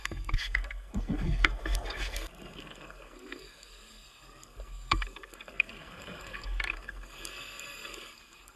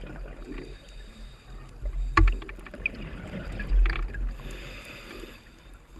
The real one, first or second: second